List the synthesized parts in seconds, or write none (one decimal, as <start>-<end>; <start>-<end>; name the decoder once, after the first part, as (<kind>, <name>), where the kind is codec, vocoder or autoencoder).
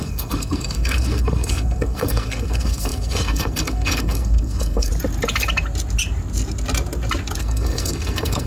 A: 0.0-4.9 (codec, SNAC); 7.4-8.5